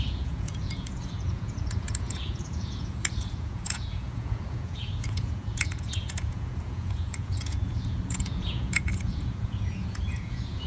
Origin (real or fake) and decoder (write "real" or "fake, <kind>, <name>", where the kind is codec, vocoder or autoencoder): fake, vocoder, Vocos